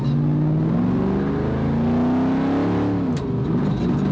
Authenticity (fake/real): real